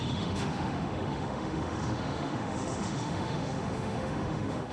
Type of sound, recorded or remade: remade